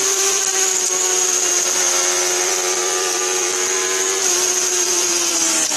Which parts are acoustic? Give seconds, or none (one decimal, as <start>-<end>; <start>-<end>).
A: none